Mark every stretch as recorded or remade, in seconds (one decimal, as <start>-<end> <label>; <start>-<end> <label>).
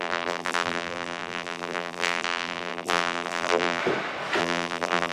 0.0-3.8 remade; 3.8-4.4 recorded; 4.4-5.1 remade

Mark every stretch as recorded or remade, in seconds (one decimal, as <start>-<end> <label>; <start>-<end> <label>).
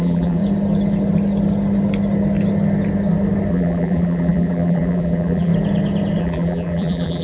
0.0-0.4 remade; 0.4-3.5 recorded; 3.5-5.5 remade; 5.5-6.2 recorded; 6.2-7.2 remade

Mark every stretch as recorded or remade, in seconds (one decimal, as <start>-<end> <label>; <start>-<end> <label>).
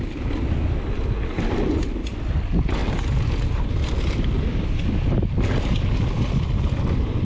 0.0-7.2 recorded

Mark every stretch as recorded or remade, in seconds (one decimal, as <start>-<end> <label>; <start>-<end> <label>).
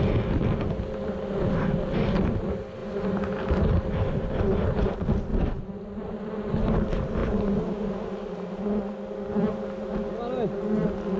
0.0-7.2 recorded; 7.2-8.3 remade; 8.3-11.2 recorded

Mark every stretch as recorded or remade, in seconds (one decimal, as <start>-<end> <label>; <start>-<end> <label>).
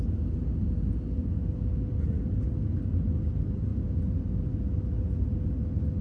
0.0-6.0 recorded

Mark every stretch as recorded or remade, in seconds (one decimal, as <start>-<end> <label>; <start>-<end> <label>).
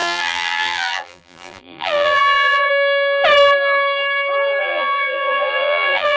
0.0-2.7 remade; 2.7-4.6 recorded; 4.6-6.2 remade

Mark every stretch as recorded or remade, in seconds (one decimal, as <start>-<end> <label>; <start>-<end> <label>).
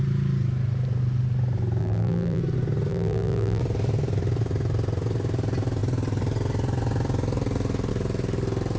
0.0-1.8 recorded; 1.8-2.4 remade; 2.4-2.9 recorded; 2.9-3.6 remade; 3.6-8.8 recorded